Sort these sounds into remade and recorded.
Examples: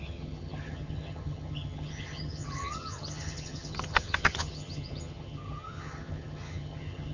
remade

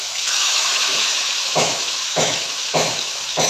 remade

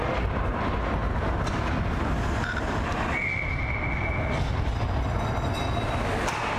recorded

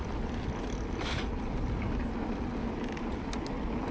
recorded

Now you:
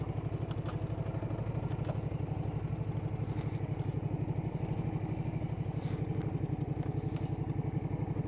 recorded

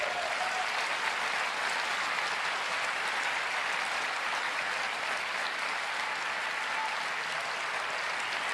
recorded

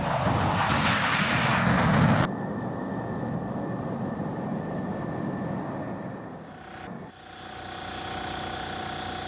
recorded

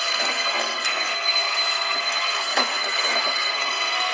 remade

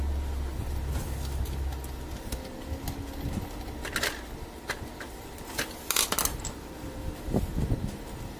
recorded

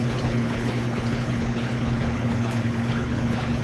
remade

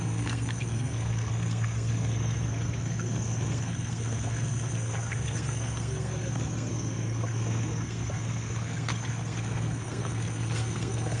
remade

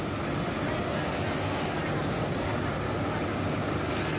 recorded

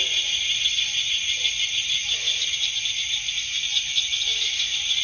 recorded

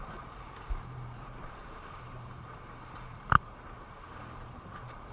remade